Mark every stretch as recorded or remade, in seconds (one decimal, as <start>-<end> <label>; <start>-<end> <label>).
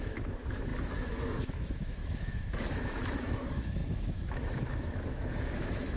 0.0-6.0 remade